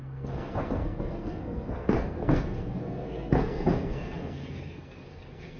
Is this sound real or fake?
fake